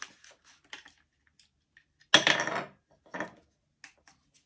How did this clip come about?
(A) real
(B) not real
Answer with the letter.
A